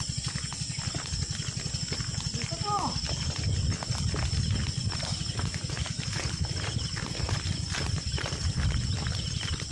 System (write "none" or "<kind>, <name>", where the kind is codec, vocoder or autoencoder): none